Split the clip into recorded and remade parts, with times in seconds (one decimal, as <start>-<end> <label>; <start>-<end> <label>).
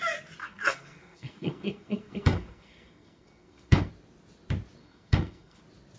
0.0-0.4 recorded; 0.4-3.9 remade; 3.9-4.8 recorded; 4.8-5.6 remade; 5.6-6.0 recorded